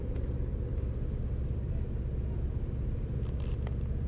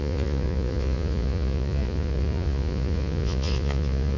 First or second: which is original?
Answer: first